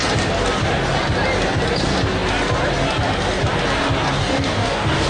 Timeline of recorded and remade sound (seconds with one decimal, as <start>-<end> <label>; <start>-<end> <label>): 0.0-4.2 recorded; 4.2-5.1 remade